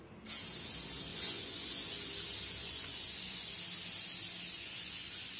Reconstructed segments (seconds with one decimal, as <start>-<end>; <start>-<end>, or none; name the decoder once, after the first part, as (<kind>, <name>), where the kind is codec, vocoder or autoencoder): 1.1-2.1 (vocoder, Vocos); 2.6-3.5; 4.6-5.4